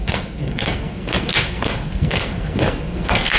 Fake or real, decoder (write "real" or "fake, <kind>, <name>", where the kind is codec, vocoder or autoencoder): fake, codec, SNAC